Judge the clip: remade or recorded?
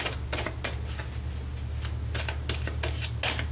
recorded